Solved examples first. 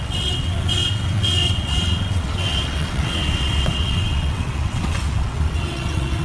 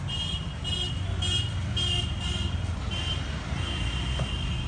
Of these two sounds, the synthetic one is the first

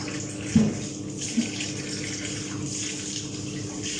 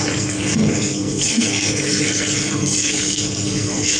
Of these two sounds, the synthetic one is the second